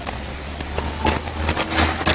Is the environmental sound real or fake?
real